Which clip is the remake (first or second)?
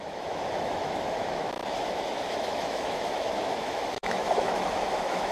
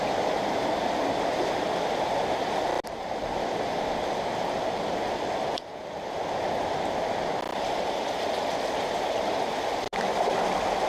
first